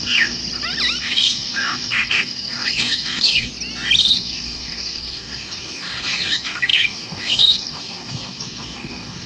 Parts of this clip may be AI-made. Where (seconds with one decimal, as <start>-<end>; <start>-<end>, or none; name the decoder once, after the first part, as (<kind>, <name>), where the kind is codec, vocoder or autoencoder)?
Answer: 0.0-0.4 (codec, DAC); 1.0-3.5; 4.0-9.3